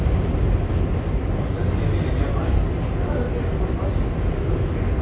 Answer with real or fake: real